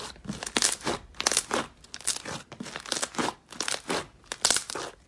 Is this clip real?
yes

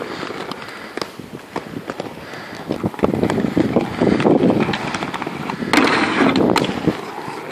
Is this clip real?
yes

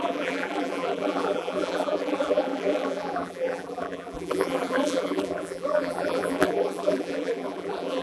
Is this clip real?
no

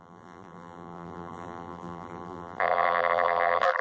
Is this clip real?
no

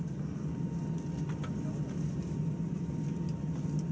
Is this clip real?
yes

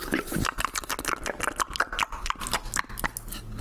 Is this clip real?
yes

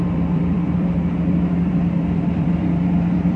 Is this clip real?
no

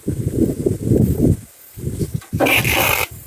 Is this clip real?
yes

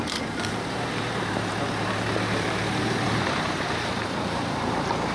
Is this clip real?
no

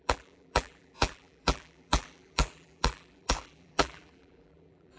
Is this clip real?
no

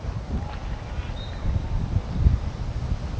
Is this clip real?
no